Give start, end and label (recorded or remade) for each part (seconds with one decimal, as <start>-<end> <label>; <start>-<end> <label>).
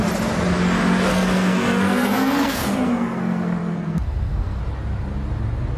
0.0-1.1 recorded; 1.1-4.6 remade; 4.6-5.8 recorded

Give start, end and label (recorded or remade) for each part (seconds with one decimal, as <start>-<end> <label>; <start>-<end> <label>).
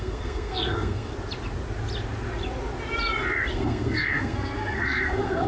0.0-1.1 remade; 1.1-3.5 recorded; 3.5-5.5 remade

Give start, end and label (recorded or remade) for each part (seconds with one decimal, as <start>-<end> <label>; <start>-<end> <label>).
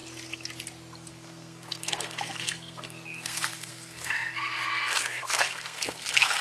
0.0-1.1 recorded; 1.1-6.4 remade